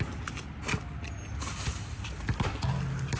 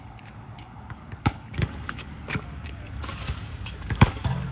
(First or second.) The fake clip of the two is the second